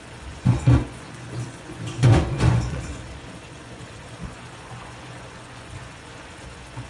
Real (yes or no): no